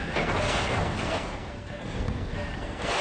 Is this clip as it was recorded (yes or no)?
no